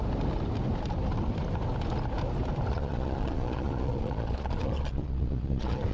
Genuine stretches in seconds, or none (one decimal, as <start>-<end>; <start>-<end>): 0.0-2.7